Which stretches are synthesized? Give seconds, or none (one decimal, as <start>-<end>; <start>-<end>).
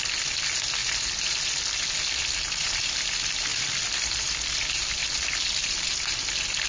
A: none